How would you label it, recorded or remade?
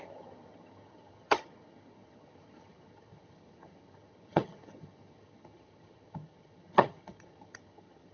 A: remade